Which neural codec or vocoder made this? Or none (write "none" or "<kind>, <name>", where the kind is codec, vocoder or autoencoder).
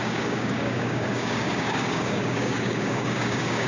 codec, DAC